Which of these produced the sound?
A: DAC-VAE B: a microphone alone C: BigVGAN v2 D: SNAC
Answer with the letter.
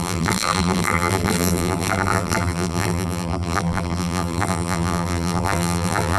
C